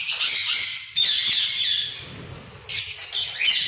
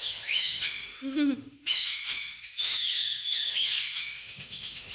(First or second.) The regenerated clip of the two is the second